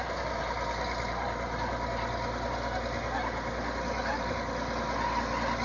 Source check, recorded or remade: recorded